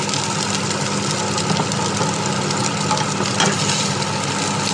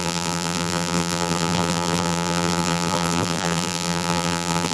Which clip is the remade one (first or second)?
second